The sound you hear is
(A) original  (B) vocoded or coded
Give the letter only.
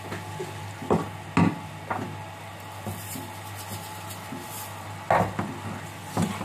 A